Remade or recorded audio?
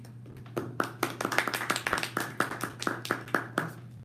recorded